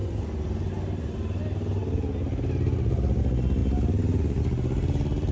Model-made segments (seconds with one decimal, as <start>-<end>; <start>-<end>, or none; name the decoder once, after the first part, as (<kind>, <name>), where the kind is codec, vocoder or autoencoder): none